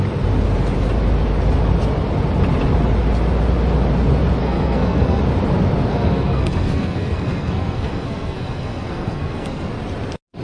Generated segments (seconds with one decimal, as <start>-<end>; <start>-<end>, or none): 4.4-5.2; 5.9-9.7